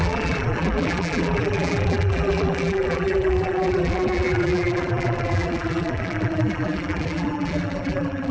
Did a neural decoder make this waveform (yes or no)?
yes